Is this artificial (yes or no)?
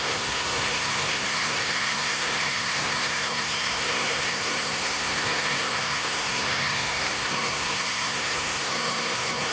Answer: yes